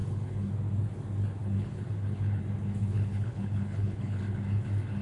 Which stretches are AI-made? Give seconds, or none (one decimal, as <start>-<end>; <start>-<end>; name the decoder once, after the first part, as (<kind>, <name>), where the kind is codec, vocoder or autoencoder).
0.0-0.5 (codec, HILCodec); 1.4-2.4; 2.8-4.2